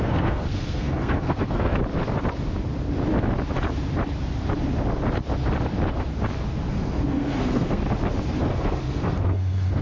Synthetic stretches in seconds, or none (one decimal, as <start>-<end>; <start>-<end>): 0.0-1.8; 6.7-7.8; 8.4-9.8